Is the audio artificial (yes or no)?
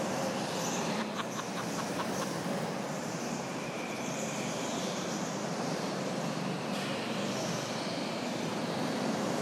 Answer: yes